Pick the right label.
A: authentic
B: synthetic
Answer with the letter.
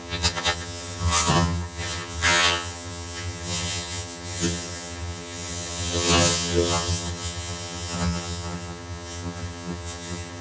B